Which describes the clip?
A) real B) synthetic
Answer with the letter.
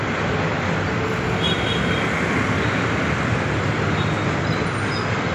A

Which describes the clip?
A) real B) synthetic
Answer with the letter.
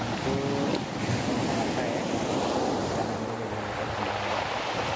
A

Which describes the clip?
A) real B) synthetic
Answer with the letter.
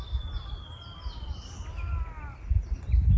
A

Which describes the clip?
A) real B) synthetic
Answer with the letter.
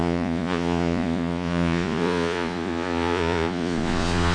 B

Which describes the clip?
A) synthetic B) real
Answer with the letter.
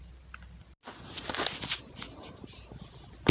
B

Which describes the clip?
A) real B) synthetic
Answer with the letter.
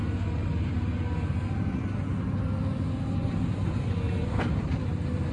A